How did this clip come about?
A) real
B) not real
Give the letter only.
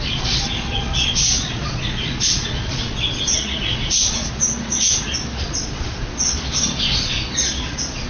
B